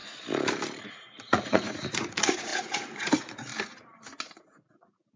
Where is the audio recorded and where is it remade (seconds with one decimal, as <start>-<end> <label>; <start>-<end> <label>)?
0.0-0.9 recorded; 0.9-3.5 remade; 3.5-4.7 recorded; 4.7-5.2 remade